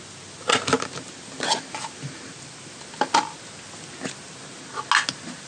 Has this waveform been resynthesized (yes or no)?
no